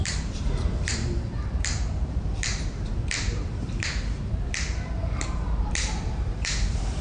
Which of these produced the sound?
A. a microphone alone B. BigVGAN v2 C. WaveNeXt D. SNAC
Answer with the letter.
B